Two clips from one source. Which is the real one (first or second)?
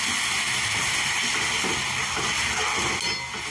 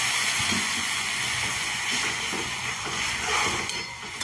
first